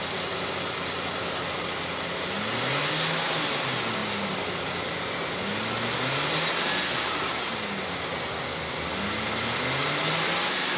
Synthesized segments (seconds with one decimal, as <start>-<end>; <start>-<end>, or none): none